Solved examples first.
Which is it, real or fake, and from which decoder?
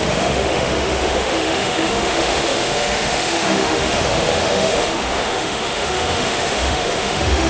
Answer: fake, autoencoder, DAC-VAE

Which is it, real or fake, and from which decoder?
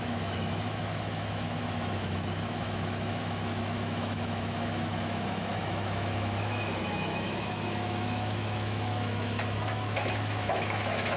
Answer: fake, autoencoder, DAC-VAE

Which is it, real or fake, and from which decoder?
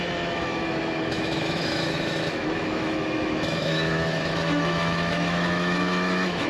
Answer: fake, autoencoder, DAC-VAE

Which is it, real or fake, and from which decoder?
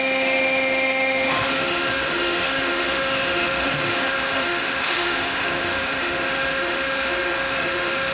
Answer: fake, autoencoder, DAC-VAE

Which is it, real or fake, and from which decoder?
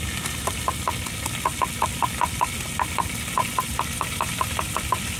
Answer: real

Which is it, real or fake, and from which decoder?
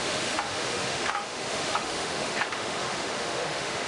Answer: fake, autoencoder, DAC-VAE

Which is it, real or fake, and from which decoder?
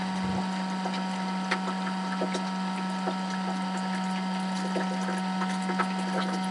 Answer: real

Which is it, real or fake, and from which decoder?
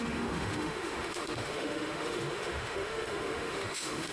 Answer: fake, autoencoder, DAC-VAE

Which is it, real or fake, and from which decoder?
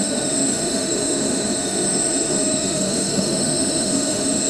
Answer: fake, autoencoder, DAC-VAE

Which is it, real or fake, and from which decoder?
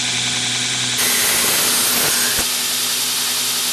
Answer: real